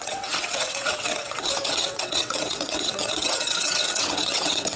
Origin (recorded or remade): remade